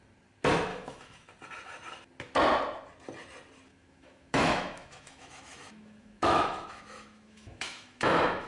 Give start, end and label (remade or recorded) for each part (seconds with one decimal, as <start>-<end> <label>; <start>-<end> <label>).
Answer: 0.0-0.7 recorded; 0.7-1.3 remade; 1.3-3.7 recorded; 3.7-8.5 remade